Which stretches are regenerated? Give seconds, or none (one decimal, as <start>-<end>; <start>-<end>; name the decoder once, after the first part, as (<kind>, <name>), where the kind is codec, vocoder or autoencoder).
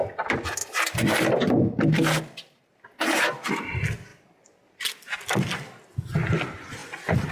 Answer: 0.6-1.2 (vocoder, BigVGAN v2)